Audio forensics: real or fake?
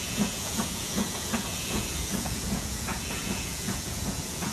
fake